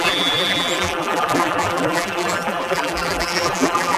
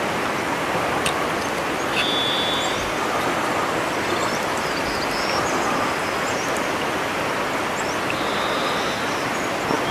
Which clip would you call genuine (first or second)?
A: second